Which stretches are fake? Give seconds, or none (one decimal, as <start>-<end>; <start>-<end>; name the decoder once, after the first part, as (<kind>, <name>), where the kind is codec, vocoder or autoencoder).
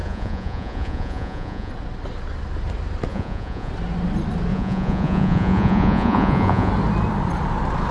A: 0.0-1.7 (vocoder, Vocos); 3.1-3.7; 4.5-6.7